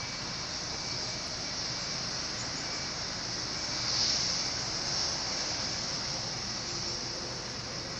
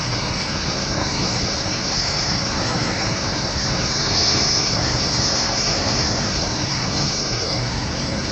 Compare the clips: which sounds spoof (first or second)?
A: second